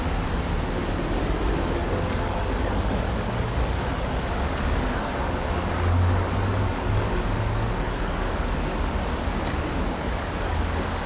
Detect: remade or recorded remade